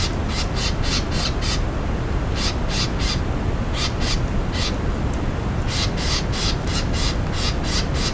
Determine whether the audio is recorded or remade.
recorded